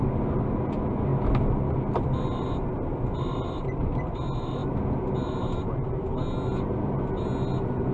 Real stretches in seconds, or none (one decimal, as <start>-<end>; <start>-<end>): 0.0-7.9